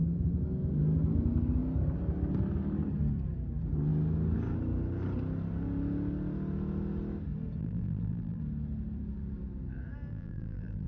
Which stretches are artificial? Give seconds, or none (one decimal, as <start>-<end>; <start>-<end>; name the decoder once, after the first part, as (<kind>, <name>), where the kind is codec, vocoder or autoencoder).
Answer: 7.6-8.4 (vocoder, BigVGAN v2); 10.1-10.9